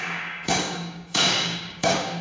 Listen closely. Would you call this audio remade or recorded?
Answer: remade